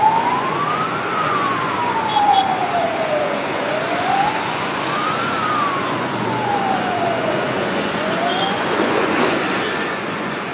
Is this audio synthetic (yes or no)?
yes